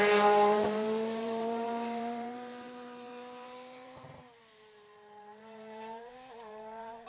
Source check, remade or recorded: remade